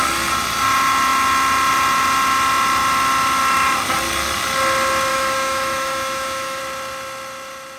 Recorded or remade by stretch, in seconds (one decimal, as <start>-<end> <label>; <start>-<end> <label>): 0.0-5.1 recorded; 5.1-6.6 remade; 6.6-7.8 recorded